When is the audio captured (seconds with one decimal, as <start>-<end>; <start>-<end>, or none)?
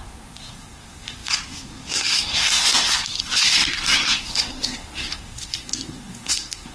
none